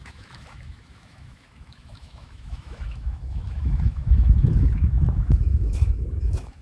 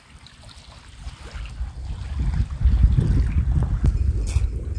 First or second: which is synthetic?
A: first